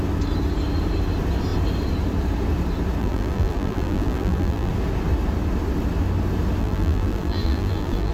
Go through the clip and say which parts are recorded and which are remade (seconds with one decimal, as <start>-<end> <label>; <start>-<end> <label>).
0.0-3.0 recorded; 3.0-4.7 remade; 4.7-6.6 recorded; 6.6-8.1 remade